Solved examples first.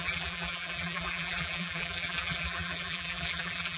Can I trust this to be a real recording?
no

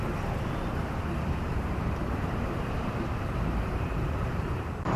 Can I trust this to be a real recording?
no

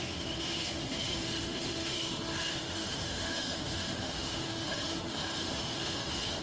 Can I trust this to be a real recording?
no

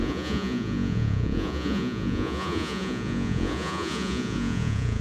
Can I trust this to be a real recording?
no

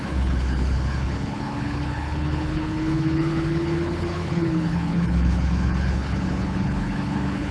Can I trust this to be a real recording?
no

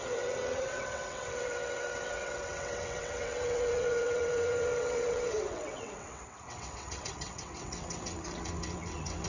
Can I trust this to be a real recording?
no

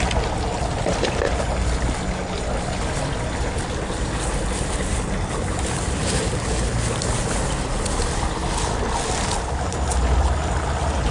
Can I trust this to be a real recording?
yes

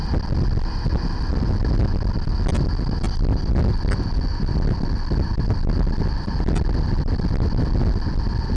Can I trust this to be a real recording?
yes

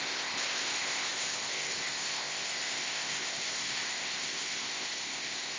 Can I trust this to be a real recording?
no